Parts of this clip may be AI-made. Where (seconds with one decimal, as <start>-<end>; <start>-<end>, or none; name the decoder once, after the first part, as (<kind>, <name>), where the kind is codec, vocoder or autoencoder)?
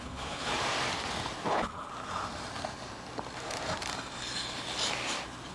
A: 0.0-0.5 (codec, HILCodec); 1.5-1.9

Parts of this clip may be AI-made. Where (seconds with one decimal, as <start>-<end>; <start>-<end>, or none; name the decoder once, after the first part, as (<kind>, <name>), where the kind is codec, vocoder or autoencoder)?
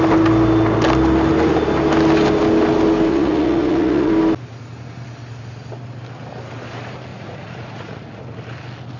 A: 3.1-4.1 (vocoder, Vocos); 7.1-8.2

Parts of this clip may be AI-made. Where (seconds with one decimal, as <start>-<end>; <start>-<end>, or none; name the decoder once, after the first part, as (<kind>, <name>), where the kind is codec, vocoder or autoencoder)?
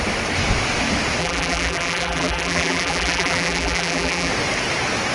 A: 1.2-4.3 (vocoder, BigVGAN v2)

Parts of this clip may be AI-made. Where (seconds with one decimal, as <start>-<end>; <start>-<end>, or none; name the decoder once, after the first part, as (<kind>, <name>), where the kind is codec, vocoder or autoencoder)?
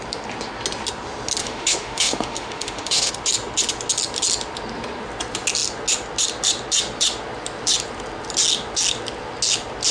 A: 1.4-3.1 (autoencoder, DAC-VAE)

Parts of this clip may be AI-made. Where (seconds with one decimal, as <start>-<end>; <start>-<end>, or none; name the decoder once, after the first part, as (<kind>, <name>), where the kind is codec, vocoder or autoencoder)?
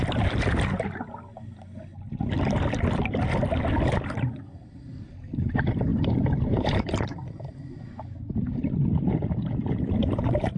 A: 5.9-7.0 (vocoder, BigVGAN v2)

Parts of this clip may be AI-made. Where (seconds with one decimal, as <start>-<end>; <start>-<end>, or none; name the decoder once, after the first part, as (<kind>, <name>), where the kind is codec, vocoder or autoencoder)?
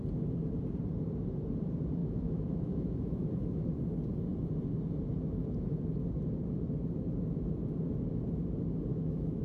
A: 2.0-3.3 (autoencoder, DAC-VAE); 8.9-9.4